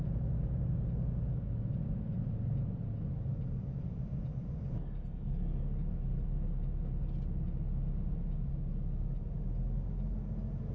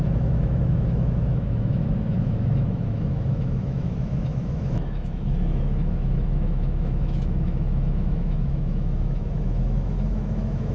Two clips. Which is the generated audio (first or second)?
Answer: second